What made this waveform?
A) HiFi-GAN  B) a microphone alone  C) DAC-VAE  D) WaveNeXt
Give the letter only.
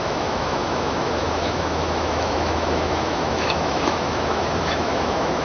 C